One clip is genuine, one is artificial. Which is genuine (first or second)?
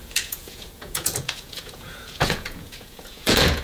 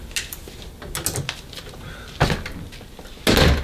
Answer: second